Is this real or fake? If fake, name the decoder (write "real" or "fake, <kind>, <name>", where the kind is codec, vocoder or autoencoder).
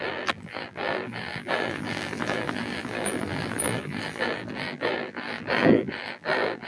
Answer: fake, vocoder, BigVGAN v2